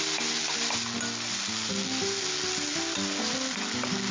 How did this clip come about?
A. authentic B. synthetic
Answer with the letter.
A